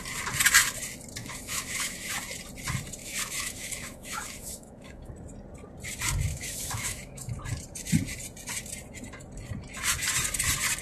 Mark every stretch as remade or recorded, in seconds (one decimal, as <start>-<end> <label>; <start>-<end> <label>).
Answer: 0.0-1.2 recorded; 1.2-2.1 remade; 2.1-3.0 recorded; 3.0-5.1 remade; 5.1-6.3 recorded; 6.3-7.3 remade; 7.3-10.8 recorded